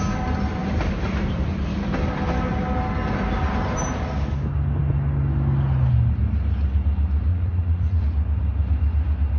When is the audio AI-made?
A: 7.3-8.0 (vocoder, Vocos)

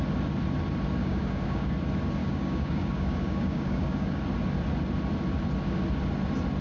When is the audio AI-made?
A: 1.0-1.7 (codec, DAC); 2.2-4.2

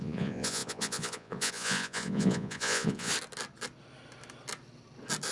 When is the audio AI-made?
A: 0.0-3.1 (vocoder, Vocos)